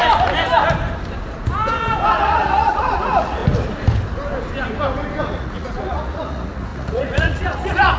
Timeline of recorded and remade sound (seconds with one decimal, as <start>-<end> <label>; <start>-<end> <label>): 0.0-2.1 recorded; 2.1-3.4 remade; 3.4-5.2 recorded; 5.2-8.0 remade